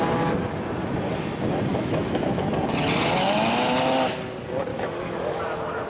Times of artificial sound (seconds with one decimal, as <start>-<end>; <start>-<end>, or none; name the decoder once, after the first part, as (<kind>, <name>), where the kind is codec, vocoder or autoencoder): 1.7-2.5 (autoencoder, DAC-VAE); 4.7-5.4